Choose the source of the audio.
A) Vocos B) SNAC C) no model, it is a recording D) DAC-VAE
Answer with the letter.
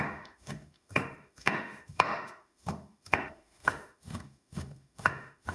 D